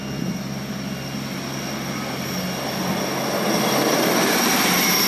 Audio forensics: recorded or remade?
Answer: recorded